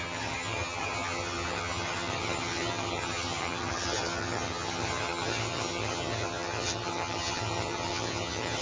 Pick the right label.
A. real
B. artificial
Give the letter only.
B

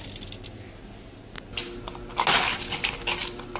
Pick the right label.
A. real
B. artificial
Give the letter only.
A